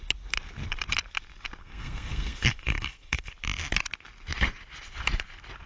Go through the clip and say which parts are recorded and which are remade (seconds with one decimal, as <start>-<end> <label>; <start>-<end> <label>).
0.0-1.6 recorded; 1.6-3.3 remade; 3.3-5.7 recorded